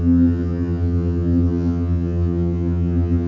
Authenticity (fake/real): fake